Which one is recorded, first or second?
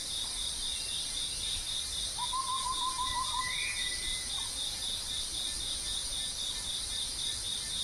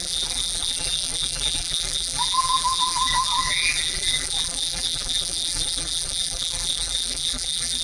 first